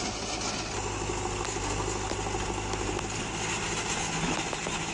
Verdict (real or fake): real